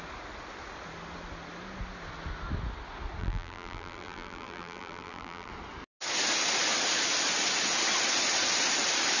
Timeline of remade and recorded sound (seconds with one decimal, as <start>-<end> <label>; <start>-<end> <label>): 0.0-3.2 recorded; 3.2-5.5 remade; 5.5-9.2 recorded